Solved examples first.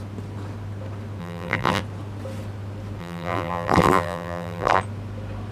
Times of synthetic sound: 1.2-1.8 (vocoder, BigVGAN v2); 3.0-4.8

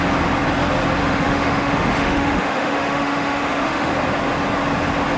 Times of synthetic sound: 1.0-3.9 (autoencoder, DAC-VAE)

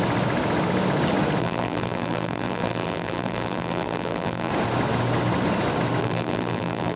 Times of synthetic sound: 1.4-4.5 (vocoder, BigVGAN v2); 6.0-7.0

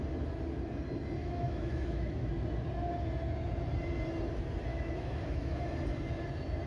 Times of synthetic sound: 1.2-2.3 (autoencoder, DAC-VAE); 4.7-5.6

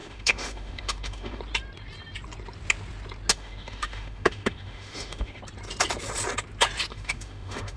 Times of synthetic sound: 0.0-1.4 (autoencoder, DAC-VAE); 3.3-5.4; 6.9-7.8

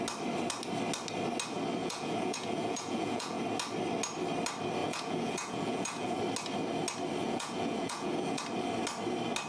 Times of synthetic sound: 1.8-3.4 (vocoder, Vocos); 4.8-6.2; 7.2-8.4